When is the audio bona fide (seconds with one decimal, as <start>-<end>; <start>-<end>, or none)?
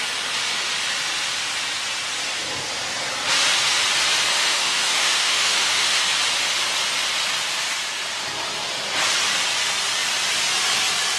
0.0-4.4; 6.0-11.2